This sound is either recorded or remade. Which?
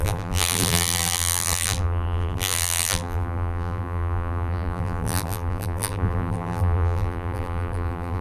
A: remade